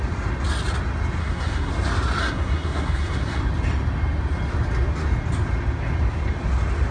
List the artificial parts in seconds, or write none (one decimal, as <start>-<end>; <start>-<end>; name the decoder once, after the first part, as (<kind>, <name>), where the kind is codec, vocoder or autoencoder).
1.2-1.7 (codec, SNAC); 2.2-3.4